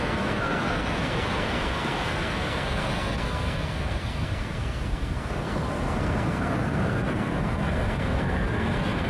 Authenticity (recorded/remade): remade